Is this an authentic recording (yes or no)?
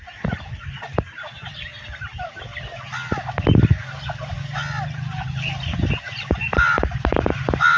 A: yes